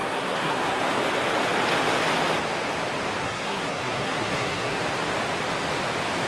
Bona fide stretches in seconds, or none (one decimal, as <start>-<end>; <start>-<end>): 0.8-3.2; 4.8-6.3